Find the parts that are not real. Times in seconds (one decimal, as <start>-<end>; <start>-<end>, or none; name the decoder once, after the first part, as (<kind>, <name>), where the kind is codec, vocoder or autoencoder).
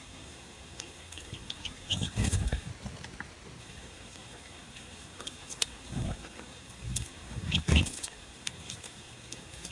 0.0-2.7 (codec, SNAC); 3.6-9.7